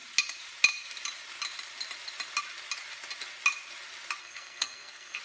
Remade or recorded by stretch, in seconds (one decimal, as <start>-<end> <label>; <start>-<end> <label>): 0.0-4.2 recorded; 4.2-5.2 remade